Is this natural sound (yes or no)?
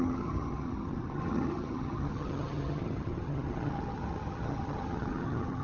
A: no